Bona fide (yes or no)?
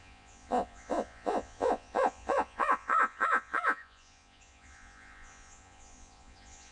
no